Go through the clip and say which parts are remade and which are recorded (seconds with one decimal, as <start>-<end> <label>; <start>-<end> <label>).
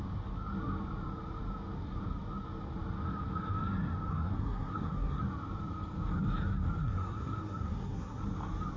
0.0-4.1 recorded; 4.1-5.2 remade; 5.2-6.8 recorded; 6.8-8.2 remade; 8.2-8.8 recorded